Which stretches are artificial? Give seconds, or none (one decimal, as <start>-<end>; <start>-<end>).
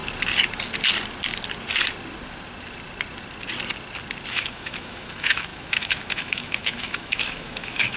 4.3-8.0